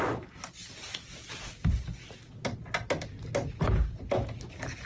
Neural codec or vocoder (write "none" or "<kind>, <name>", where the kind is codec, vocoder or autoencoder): none